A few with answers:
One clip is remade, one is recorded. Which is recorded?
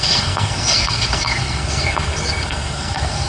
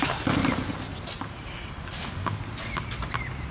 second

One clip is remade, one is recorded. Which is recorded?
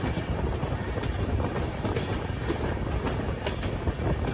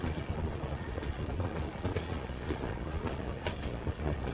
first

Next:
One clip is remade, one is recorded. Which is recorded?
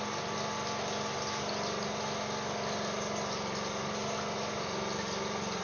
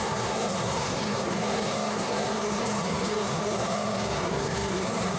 first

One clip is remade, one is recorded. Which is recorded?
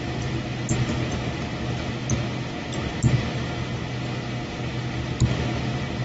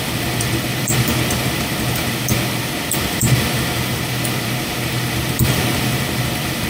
first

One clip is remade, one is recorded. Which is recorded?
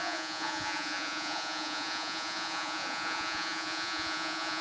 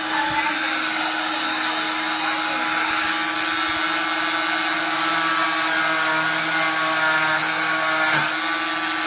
second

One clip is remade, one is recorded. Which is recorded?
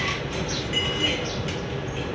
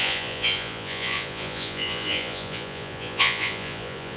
first